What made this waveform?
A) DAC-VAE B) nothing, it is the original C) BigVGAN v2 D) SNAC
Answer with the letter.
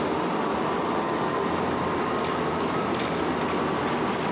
B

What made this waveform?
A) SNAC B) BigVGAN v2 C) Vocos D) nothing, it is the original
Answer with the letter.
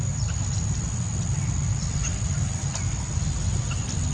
D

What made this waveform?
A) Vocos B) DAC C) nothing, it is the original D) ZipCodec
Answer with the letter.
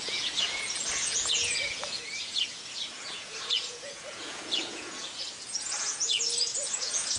A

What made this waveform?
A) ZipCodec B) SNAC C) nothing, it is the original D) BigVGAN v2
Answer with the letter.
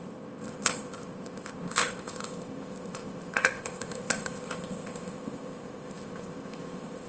A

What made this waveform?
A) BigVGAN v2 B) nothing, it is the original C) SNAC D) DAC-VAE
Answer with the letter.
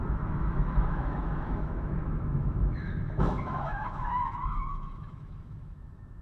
D